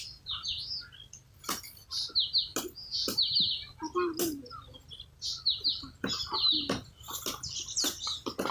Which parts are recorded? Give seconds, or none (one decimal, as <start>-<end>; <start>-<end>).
0.0-8.5